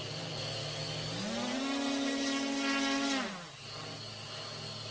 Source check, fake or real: real